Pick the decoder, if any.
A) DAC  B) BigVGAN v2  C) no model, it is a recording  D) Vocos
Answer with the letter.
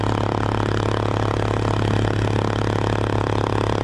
C